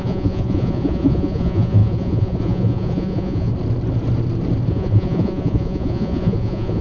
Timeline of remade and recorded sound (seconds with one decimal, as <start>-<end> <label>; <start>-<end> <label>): 0.0-3.5 remade; 3.5-4.7 recorded; 4.7-6.8 remade